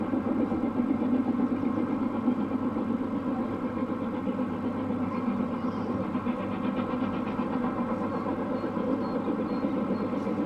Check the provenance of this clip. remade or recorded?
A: recorded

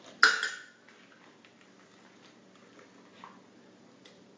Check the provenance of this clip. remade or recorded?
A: recorded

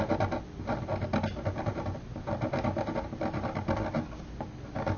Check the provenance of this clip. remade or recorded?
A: recorded